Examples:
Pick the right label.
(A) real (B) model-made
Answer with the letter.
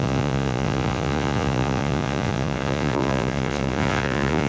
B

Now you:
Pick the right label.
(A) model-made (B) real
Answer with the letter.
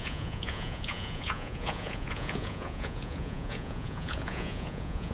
A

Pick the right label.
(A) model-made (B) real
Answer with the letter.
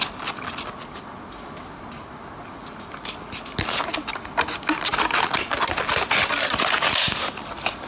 B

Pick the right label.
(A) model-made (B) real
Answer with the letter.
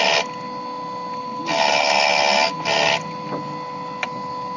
B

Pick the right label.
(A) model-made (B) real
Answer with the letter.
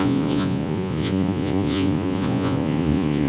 A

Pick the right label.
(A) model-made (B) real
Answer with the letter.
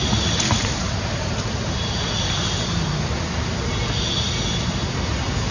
B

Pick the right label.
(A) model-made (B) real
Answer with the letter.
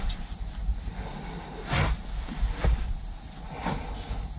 B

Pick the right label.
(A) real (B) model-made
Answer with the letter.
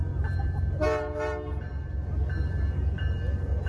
A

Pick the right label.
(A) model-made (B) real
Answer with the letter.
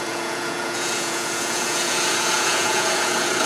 A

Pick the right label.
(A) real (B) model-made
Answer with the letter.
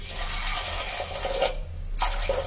A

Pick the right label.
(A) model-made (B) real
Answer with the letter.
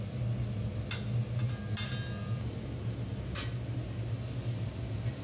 B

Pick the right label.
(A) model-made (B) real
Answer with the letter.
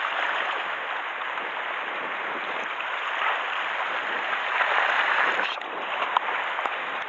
B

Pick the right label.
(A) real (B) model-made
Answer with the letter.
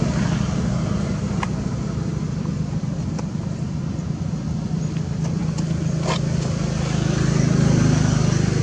A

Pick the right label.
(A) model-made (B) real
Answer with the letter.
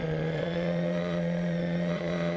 A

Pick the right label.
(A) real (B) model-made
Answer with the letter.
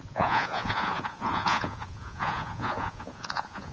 B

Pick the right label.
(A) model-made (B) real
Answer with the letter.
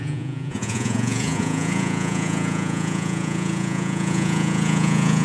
A